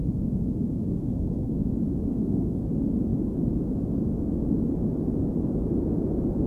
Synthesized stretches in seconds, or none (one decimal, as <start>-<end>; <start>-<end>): 0.9-1.7; 2.1-2.6